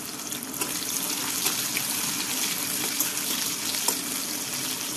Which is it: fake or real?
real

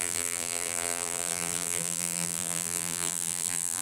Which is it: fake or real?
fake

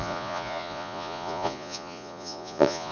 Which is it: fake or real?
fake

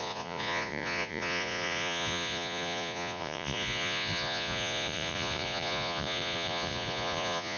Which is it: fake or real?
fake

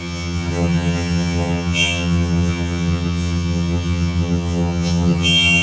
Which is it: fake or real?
fake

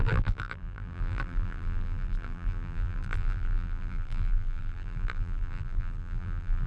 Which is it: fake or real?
fake